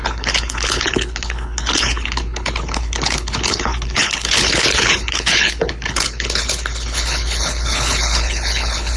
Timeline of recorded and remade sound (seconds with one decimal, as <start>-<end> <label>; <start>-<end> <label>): 0.0-9.0 remade